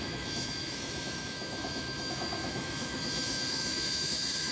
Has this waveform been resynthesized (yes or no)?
yes